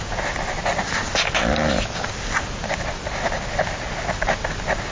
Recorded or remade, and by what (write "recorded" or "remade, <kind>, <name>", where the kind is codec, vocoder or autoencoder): recorded